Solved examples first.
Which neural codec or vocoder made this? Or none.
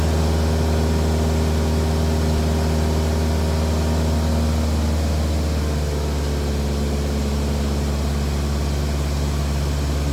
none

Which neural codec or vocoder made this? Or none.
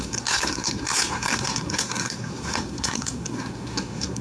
codec, SNAC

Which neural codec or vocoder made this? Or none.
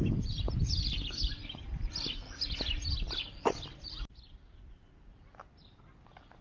none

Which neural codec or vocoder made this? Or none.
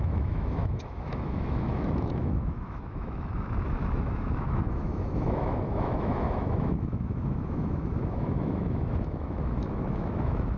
autoencoder, DAC-VAE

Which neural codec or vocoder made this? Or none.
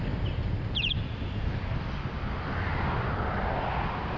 none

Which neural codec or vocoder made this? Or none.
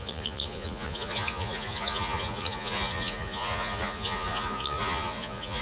vocoder, Vocos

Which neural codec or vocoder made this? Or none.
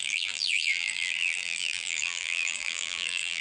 vocoder, BigVGAN v2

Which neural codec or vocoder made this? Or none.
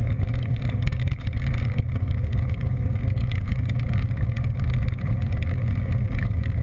codec, DAC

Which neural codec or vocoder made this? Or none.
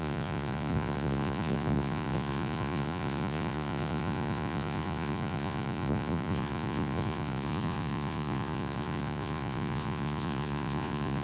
vocoder, Vocos